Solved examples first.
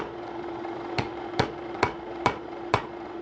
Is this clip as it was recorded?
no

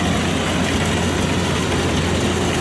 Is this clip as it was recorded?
yes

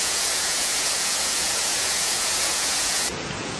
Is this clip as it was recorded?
no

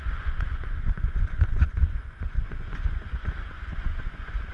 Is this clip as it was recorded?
no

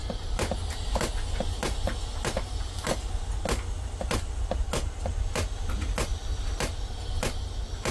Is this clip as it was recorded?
yes